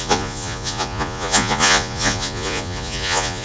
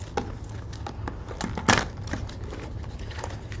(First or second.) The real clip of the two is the second